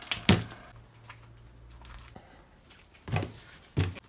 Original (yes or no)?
yes